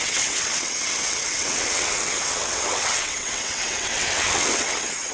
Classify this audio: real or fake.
fake